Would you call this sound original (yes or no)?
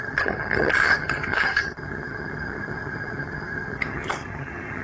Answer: no